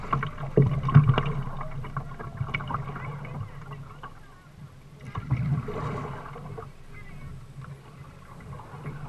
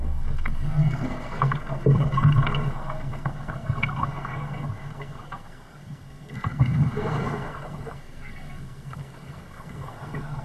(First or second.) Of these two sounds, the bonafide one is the first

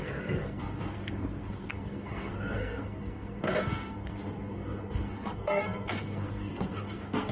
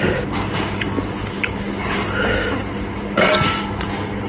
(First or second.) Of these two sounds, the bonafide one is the second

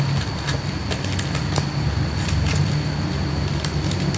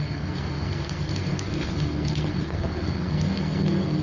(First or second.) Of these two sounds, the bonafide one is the first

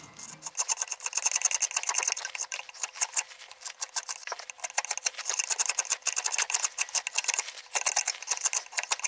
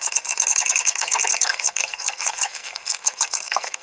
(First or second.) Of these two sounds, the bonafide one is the first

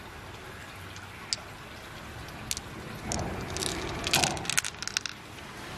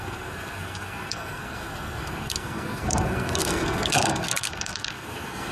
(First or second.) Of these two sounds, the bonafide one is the first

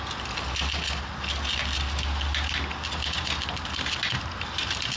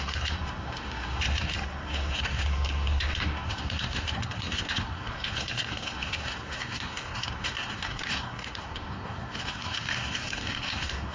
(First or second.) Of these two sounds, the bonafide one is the first